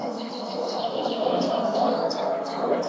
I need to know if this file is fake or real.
fake